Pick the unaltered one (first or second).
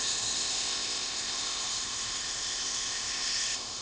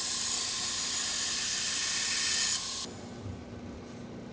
second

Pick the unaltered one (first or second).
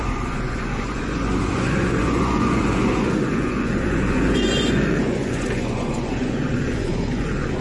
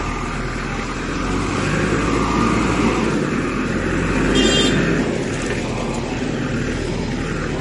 second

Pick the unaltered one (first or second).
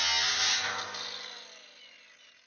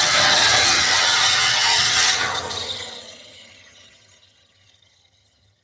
first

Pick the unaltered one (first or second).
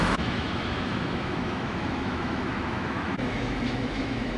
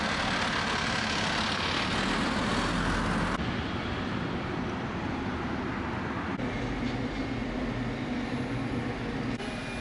second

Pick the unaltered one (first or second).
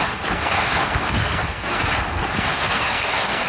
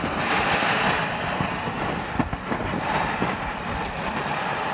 second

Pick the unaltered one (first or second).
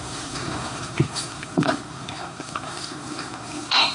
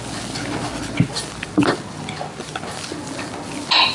second